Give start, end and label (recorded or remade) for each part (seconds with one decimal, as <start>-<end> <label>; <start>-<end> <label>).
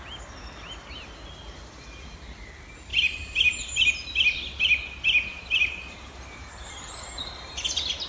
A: 0.0-2.9 recorded; 2.9-3.9 remade; 3.9-5.3 recorded; 5.3-7.5 remade; 7.5-8.1 recorded